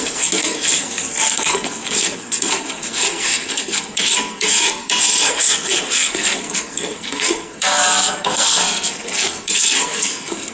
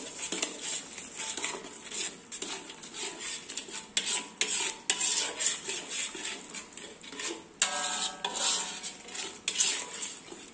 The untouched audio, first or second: second